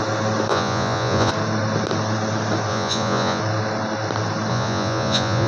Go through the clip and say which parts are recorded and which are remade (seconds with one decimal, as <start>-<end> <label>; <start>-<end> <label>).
0.0-0.5 recorded; 0.5-1.3 remade; 1.3-2.7 recorded; 2.7-3.4 remade; 3.4-4.5 recorded; 4.5-5.5 remade